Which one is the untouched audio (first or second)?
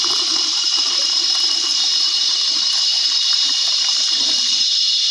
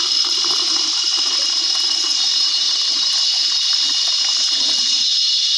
second